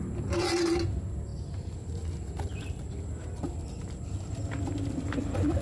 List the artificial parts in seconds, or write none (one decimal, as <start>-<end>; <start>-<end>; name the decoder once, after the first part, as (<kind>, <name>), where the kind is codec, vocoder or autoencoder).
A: none